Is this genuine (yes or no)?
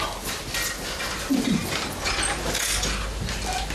yes